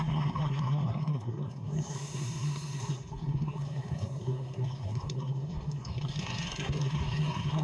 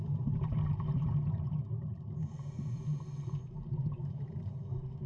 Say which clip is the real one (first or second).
second